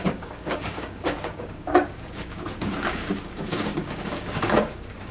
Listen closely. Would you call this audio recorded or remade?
remade